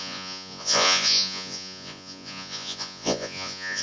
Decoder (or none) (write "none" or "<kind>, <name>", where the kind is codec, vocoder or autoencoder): vocoder, Vocos